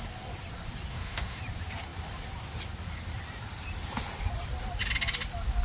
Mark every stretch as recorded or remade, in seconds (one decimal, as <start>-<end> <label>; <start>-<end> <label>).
0.0-0.9 recorded; 0.9-1.4 remade; 1.4-5.6 recorded